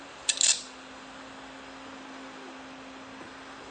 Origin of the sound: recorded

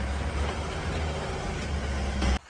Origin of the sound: recorded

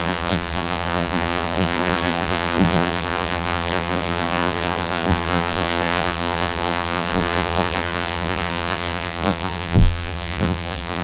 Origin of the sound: remade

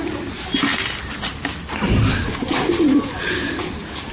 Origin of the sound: recorded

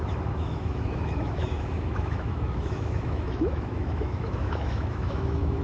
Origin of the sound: remade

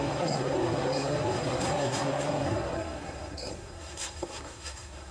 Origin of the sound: remade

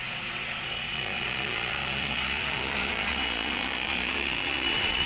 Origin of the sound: remade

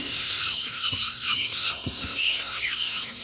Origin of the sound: remade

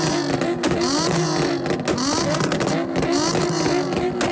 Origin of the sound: recorded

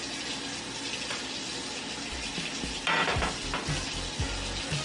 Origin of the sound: recorded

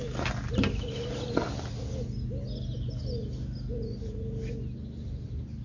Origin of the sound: recorded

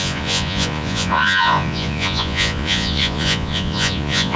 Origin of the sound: remade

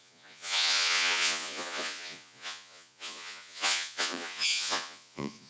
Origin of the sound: remade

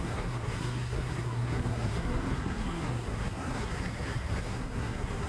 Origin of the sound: remade